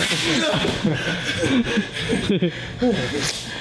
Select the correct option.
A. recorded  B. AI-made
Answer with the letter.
A